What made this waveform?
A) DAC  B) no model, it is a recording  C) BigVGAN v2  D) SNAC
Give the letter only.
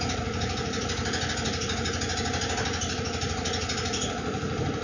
B